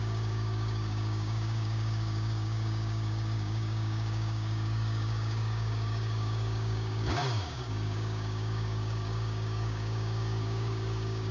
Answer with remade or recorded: remade